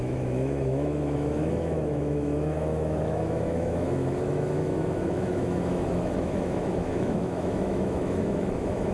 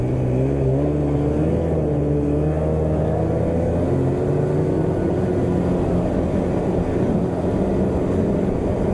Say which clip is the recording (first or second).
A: second